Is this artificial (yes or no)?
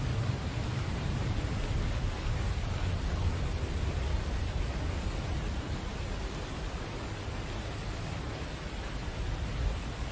no